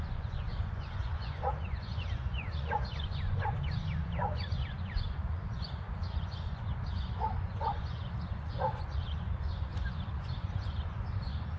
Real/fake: fake